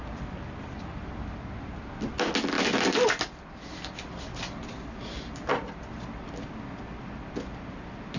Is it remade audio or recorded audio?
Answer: recorded